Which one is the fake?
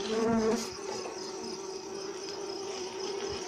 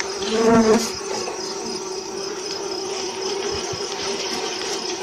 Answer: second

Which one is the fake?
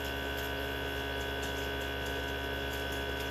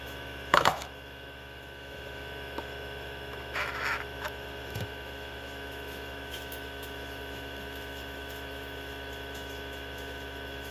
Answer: second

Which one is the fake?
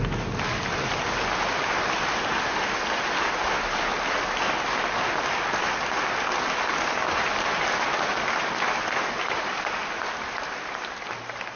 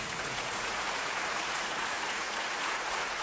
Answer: second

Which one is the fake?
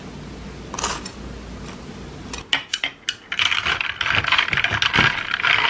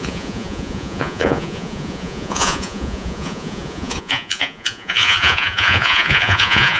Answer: second